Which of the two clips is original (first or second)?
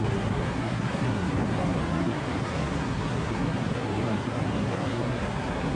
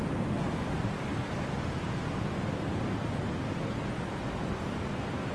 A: second